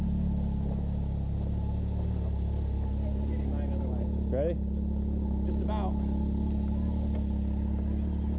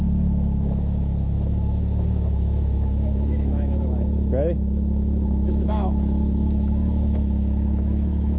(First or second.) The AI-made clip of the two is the second